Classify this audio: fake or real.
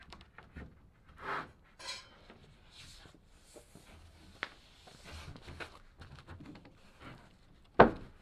real